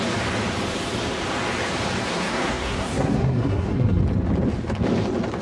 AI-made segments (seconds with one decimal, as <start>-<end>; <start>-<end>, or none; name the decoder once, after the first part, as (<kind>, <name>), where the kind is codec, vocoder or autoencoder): 2.0-4.0 (codec, SNAC)